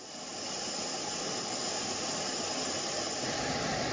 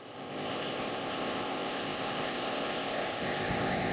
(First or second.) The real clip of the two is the first